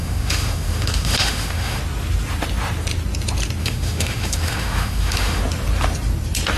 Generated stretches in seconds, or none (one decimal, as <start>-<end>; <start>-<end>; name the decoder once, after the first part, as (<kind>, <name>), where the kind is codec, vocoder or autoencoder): 0.0-1.8 (autoencoder, DAC-VAE); 3.6-5.4